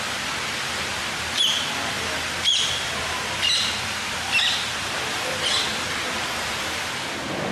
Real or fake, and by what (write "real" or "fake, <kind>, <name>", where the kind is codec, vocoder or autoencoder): fake, vocoder, BigVGAN v2